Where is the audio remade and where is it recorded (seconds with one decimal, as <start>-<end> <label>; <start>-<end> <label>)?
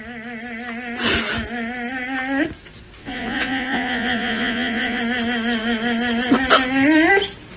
0.0-3.0 recorded; 3.0-5.0 remade; 5.0-7.6 recorded